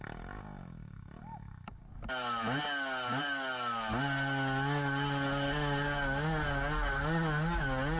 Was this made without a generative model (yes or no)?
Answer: yes